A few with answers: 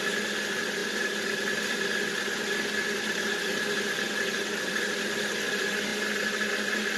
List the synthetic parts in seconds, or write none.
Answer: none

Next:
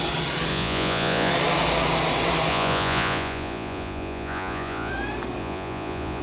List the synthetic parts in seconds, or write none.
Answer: 0.5-1.3 (vocoder, Vocos); 2.5-4.9; 5.4-6.2

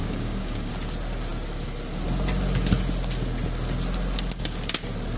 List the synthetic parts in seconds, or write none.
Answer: 0.0-0.7 (codec, DAC)

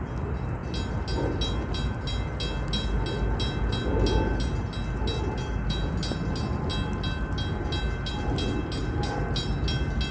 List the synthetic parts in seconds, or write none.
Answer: none

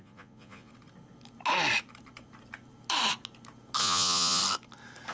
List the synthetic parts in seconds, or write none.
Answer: 0.0-0.7 (vocoder, Vocos); 3.8-4.4

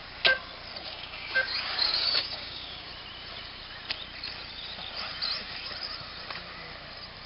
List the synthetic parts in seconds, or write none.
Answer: 0.8-2.9 (codec, DAC)

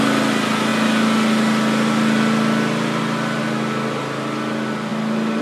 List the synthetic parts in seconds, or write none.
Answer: none